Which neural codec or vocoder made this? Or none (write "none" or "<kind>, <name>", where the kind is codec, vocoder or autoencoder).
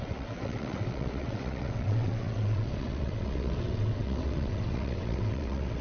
vocoder, WaveNeXt